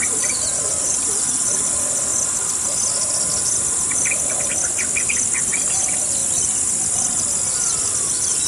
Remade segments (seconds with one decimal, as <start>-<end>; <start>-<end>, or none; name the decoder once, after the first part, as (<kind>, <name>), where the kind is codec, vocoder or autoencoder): 0.0-2.1 (vocoder, BigVGAN v2); 5.4-6.2; 7.9-8.5